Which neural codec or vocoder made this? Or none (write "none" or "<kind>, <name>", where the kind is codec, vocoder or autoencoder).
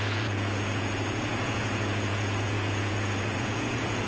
vocoder, Vocos